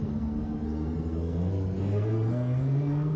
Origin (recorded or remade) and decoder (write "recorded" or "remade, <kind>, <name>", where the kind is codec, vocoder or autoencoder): remade, codec, SNAC